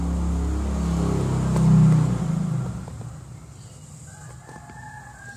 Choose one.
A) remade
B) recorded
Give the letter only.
B